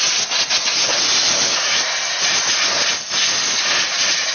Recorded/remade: recorded